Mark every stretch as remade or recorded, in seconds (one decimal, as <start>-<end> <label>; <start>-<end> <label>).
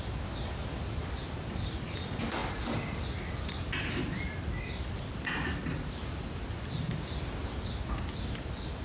0.0-8.8 recorded